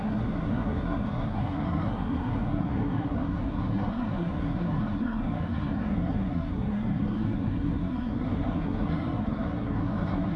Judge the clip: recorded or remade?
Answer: remade